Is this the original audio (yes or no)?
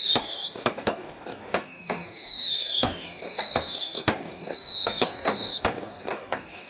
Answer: no